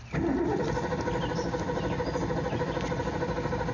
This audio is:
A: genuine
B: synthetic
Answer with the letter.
A